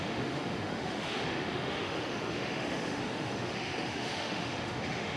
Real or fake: fake